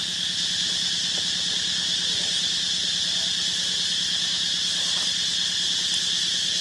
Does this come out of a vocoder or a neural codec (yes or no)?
no